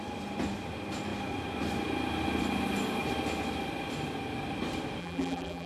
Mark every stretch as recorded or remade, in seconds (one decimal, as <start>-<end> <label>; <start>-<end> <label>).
0.0-5.0 recorded; 5.0-5.7 remade